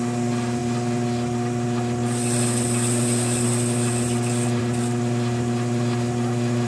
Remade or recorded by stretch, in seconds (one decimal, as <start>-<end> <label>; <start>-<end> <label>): 0.0-6.7 recorded